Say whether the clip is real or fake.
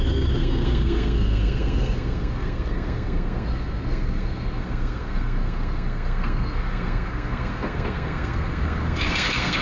fake